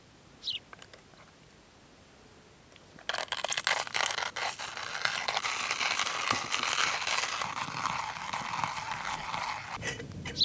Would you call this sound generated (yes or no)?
no